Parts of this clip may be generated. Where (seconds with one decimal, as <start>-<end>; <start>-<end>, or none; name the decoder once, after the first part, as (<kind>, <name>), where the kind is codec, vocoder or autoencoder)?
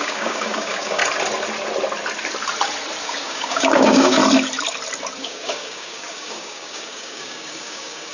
0.0-1.0 (codec, DAC); 3.0-4.2; 5.2-8.1